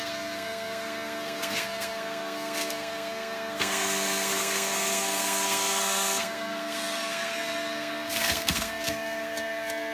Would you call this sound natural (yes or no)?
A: no